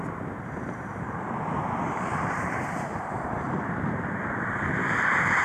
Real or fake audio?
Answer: fake